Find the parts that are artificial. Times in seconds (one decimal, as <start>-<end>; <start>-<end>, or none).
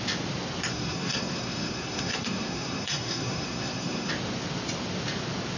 0.7-4.1